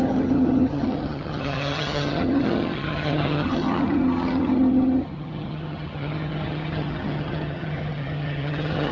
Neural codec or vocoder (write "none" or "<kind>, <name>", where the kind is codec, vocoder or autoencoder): vocoder, HiFi-GAN